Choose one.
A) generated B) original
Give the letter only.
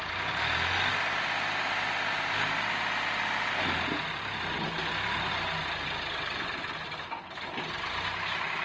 B